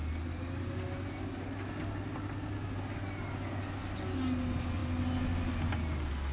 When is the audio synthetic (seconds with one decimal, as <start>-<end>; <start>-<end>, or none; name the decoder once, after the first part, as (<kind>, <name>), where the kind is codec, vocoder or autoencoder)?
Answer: none